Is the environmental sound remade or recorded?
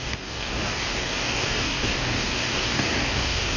remade